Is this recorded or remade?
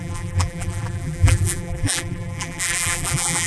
remade